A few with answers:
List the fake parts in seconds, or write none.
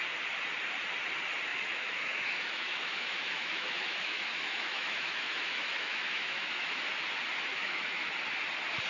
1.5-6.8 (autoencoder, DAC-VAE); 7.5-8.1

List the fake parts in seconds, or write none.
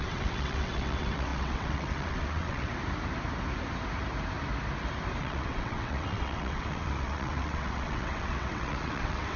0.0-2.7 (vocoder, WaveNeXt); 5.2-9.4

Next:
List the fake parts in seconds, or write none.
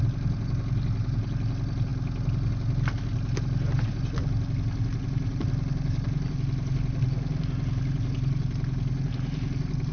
none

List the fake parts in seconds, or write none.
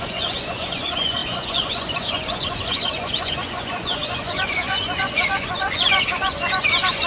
0.0-7.1 (vocoder, Vocos)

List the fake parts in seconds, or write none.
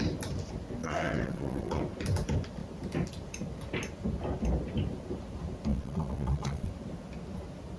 0.8-1.8 (vocoder, WaveNeXt); 5.7-6.7